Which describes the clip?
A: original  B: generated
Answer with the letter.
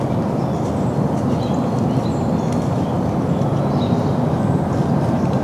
A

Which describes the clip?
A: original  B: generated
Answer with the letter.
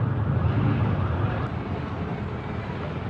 A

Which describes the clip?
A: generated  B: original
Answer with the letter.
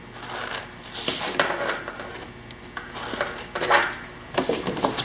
B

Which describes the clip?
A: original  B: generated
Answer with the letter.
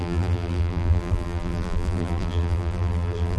B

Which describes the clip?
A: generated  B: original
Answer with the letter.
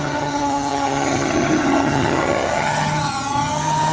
A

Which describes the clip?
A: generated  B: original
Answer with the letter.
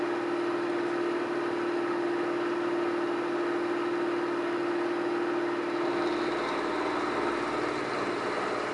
B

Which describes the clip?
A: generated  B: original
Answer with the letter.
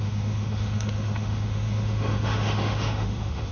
A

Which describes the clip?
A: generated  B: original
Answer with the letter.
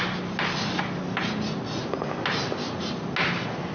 B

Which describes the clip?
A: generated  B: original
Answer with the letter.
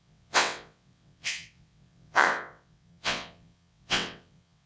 A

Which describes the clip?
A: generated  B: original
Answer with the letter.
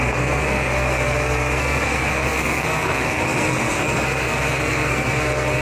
A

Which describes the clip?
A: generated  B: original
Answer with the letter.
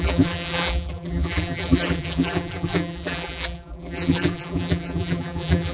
A